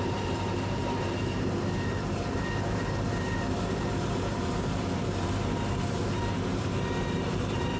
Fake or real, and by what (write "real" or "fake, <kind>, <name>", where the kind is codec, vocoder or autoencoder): fake, vocoder, BigVGAN v2